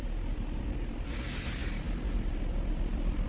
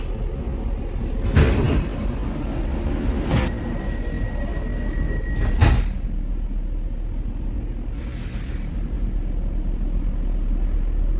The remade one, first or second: first